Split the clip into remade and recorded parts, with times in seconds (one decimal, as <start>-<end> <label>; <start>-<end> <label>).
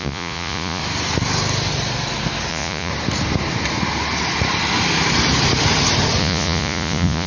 0.0-0.8 remade; 0.8-2.5 recorded; 2.5-2.9 remade; 2.9-6.2 recorded; 6.2-7.3 remade